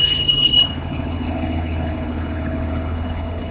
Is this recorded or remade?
remade